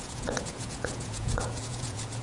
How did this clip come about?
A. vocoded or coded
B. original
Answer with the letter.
A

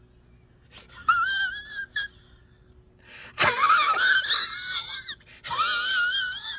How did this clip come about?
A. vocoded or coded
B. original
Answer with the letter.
B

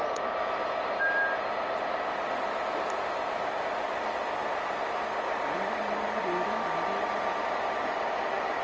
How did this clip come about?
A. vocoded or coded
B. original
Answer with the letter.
B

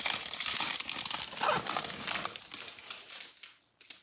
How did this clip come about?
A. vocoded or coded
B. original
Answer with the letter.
B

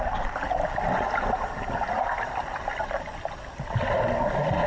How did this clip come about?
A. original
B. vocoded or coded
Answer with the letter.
A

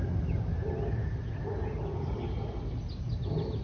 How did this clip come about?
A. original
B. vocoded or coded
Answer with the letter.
A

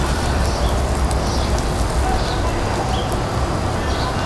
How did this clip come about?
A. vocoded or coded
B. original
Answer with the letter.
B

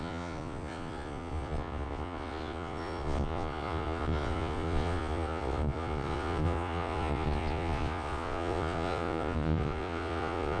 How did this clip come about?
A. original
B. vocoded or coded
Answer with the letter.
B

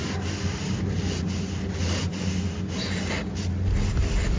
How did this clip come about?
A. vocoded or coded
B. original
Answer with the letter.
B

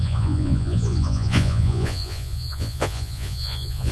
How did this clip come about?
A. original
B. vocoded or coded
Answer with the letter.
B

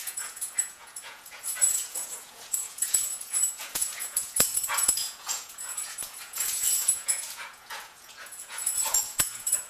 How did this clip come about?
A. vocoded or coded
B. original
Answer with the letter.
A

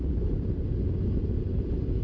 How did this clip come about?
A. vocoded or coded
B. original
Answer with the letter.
B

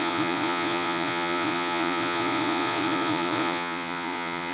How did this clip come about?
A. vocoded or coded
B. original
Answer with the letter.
A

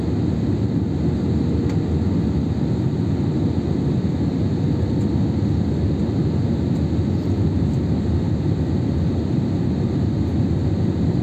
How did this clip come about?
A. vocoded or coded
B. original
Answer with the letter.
B